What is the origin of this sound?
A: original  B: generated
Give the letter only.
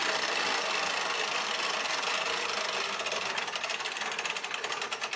A